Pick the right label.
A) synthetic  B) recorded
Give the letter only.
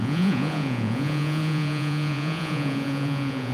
A